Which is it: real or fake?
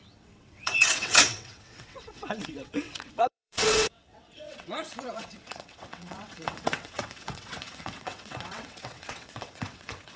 fake